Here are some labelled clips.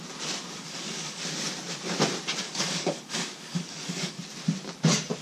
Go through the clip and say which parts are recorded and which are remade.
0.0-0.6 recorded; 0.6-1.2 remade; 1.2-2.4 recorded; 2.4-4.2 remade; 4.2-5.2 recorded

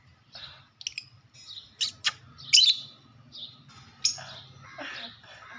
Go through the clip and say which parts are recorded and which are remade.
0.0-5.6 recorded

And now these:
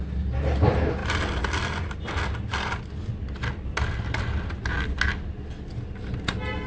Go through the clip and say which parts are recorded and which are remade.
0.0-6.7 recorded

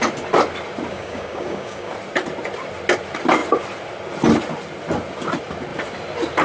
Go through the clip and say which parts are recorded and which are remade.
0.0-0.9 recorded; 0.9-1.9 remade; 1.9-6.4 recorded

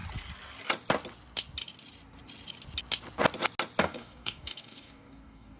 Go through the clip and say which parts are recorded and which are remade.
0.0-3.8 recorded; 3.8-5.6 remade

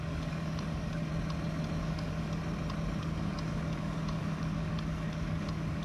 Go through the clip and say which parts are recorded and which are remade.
0.0-1.1 remade; 1.1-1.8 recorded; 1.8-2.4 remade; 2.4-3.0 recorded; 3.0-5.8 remade

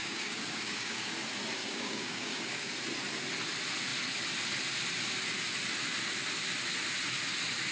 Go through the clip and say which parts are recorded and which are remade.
0.0-1.1 remade; 1.1-1.6 recorded; 1.6-2.7 remade; 2.7-7.7 recorded

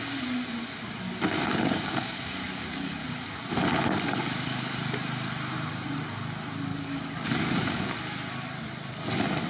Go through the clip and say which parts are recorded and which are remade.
0.0-1.5 recorded; 1.5-3.4 remade; 3.4-3.8 recorded; 3.8-4.8 remade; 4.8-6.7 recorded; 6.7-8.0 remade; 8.0-9.5 recorded